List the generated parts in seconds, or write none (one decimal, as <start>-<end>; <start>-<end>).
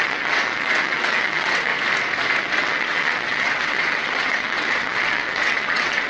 0.0-1.7; 2.4-6.1